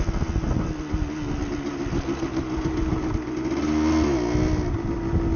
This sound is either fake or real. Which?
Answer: real